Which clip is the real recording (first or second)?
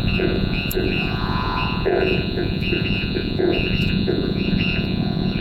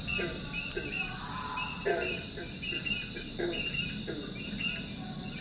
second